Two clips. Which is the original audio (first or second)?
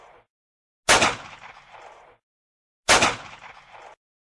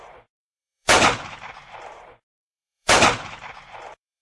first